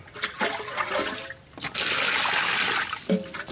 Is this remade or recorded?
recorded